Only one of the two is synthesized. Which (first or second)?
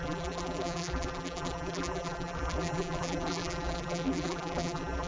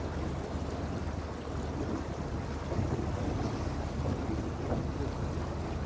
first